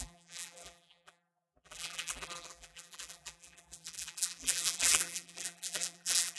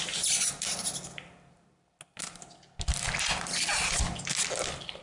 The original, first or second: second